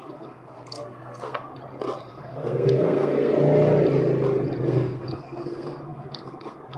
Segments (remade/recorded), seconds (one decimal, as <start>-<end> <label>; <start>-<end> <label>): 0.0-1.5 remade; 1.5-2.1 recorded; 2.1-3.3 remade; 3.3-4.6 recorded; 4.6-6.8 remade